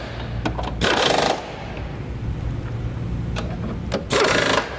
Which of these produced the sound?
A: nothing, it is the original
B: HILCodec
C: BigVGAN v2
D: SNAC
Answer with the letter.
A